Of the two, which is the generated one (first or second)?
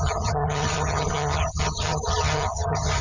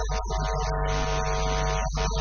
first